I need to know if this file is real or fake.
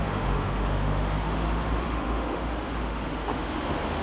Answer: fake